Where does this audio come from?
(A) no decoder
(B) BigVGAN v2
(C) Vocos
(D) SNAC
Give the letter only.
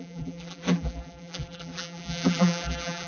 B